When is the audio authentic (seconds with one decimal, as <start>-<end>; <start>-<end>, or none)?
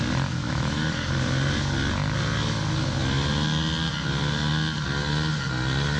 0.0-0.4; 1.1-6.0